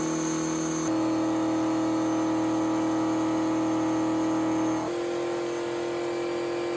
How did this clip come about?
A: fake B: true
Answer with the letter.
B